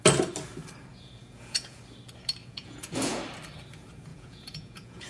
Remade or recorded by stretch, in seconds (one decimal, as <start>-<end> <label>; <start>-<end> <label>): 0.0-0.9 recorded; 0.9-1.8 remade; 1.8-2.4 recorded; 2.4-3.2 remade; 3.2-4.1 recorded; 4.1-5.1 remade

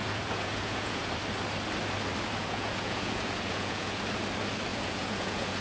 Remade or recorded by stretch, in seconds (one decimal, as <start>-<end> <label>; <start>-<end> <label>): 0.0-1.1 remade; 1.1-2.4 recorded; 2.4-4.0 remade; 4.0-4.7 recorded; 4.7-5.6 remade

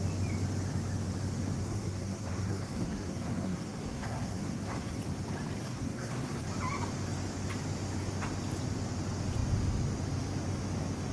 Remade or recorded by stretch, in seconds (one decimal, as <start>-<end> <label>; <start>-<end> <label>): 0.0-1.6 recorded; 1.6-5.0 remade; 5.0-5.6 recorded; 5.6-6.4 remade; 6.4-11.1 recorded

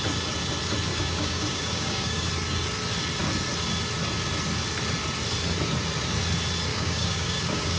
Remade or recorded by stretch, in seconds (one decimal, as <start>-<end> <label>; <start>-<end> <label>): 0.0-0.9 recorded; 0.9-2.3 remade; 2.3-6.7 recorded; 6.7-7.8 remade

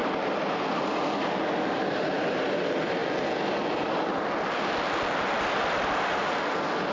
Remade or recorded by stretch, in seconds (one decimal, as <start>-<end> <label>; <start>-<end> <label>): 0.0-6.9 recorded

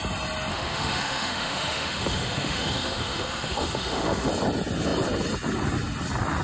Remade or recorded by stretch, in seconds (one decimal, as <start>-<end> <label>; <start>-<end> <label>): 0.0-0.5 recorded; 0.5-4.3 remade; 4.3-6.4 recorded

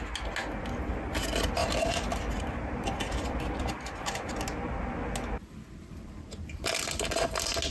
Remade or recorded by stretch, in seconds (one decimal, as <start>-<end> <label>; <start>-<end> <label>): 0.0-1.6 recorded; 1.6-4.4 remade; 4.4-7.7 recorded